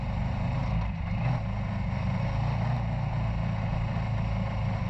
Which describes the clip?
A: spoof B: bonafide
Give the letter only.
B